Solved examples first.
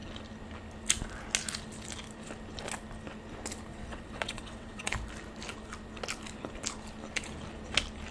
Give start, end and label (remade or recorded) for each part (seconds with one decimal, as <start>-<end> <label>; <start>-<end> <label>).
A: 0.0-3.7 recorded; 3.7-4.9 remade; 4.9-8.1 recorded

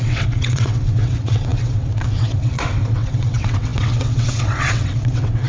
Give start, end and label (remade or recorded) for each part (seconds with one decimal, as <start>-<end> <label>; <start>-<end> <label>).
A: 0.0-5.5 remade

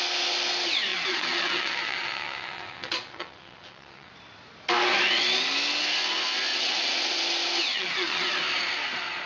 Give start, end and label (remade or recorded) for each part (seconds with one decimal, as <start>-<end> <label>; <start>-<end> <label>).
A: 0.0-0.9 recorded; 0.9-4.1 remade; 4.1-6.5 recorded; 6.5-7.2 remade; 7.2-7.7 recorded; 7.7-8.2 remade; 8.2-9.3 recorded